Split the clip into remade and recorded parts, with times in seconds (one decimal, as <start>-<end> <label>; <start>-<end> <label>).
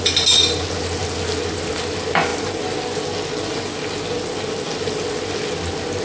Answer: 0.0-6.0 recorded